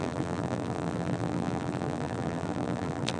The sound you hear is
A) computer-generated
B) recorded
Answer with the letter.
A